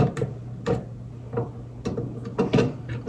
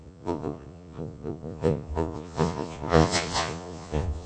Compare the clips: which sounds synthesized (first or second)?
second